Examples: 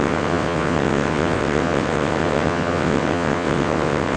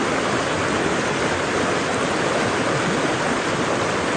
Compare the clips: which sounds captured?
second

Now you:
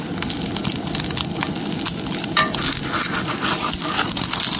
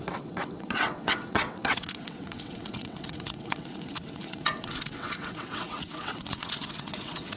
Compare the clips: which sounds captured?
first